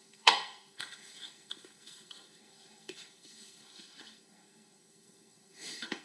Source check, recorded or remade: remade